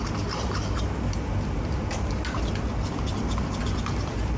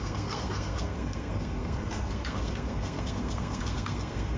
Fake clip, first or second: second